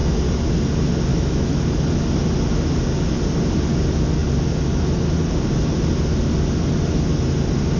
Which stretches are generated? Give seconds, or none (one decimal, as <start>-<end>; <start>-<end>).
1.1-1.6

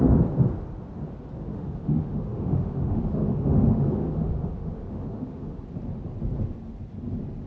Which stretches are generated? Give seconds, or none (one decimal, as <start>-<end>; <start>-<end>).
1.5-5.6

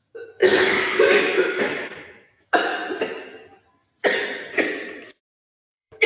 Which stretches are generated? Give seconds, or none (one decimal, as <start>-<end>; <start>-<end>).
0.0-2.7; 5.1-6.1

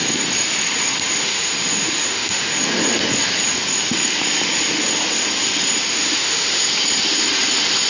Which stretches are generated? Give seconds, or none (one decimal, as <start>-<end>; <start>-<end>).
1.2-2.5; 5.9-6.6

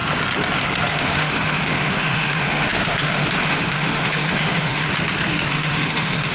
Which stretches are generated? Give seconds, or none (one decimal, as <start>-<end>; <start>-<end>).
0.9-4.9; 5.5-6.3

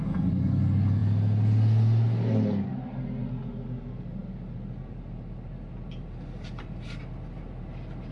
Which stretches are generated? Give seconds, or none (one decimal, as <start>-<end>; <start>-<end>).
none